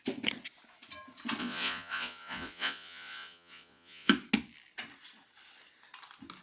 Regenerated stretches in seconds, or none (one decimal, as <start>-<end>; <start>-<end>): 1.4-4.1